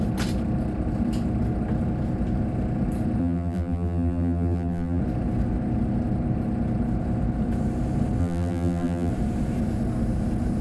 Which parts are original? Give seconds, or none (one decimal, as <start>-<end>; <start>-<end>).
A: 0.0-3.2; 5.0-8.2; 9.1-10.6